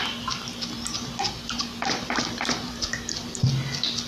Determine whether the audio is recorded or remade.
recorded